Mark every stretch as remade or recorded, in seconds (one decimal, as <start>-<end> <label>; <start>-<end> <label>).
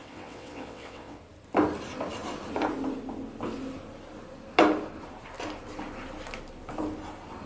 0.0-1.2 remade; 1.2-7.5 recorded